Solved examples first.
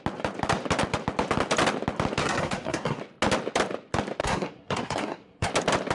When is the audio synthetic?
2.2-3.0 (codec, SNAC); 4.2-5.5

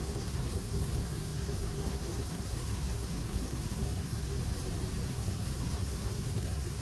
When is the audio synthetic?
0.0-4.4 (codec, SNAC); 5.1-6.8

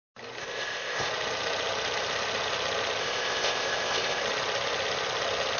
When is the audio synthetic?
0.4-1.1 (codec, ZipCodec); 3.0-4.2

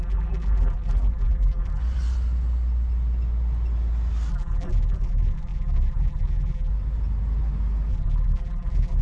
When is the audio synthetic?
0.0-1.8 (vocoder, BigVGAN v2); 4.3-6.7; 7.9-9.0

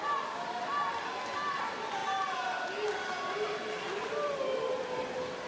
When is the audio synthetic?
0.0-0.7 (vocoder, BigVGAN v2); 1.3-2.0; 4.0-5.5

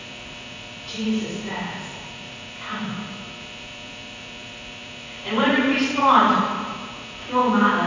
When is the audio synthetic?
0.0-7.4 (vocoder, Vocos)

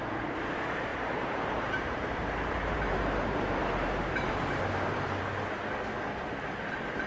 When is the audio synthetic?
0.9-5.2 (vocoder, BigVGAN v2)